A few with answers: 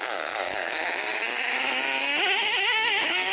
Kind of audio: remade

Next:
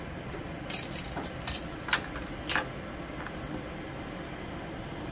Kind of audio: recorded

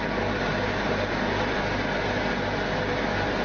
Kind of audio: recorded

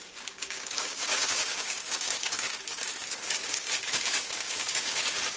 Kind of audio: remade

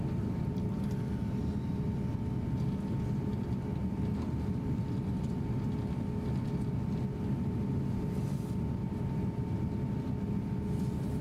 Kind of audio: recorded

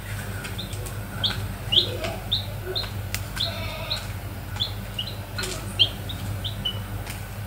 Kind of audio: recorded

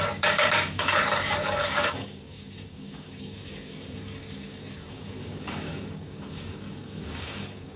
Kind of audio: remade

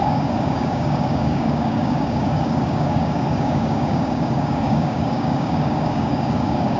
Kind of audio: remade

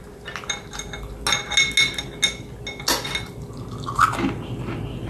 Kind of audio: recorded